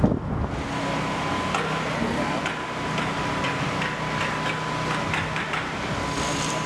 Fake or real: real